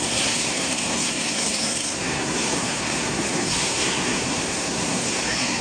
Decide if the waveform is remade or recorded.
remade